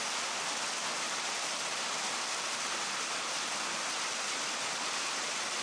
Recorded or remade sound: recorded